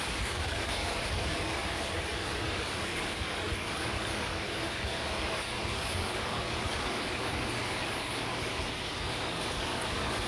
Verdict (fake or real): fake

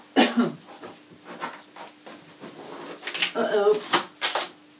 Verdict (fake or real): real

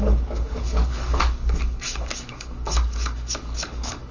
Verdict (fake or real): fake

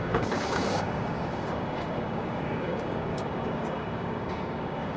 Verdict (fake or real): fake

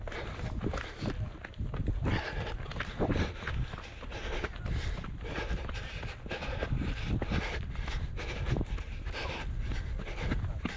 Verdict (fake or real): real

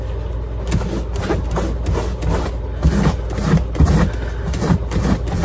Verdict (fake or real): real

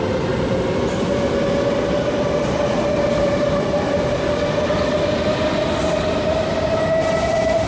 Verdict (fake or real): real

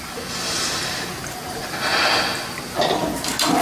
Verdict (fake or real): real